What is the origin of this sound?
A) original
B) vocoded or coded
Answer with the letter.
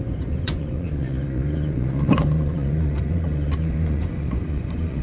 B